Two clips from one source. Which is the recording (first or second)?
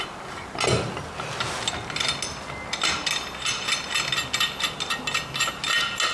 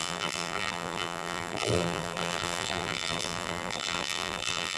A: first